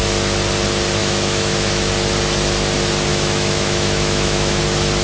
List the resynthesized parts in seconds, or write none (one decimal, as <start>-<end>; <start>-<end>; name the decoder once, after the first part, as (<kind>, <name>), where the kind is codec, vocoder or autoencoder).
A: 1.0-1.9 (autoencoder, DAC-VAE); 3.1-4.6